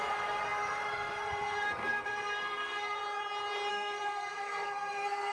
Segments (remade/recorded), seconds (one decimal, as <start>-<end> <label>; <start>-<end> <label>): 0.0-3.0 remade; 3.0-3.7 recorded; 3.7-5.3 remade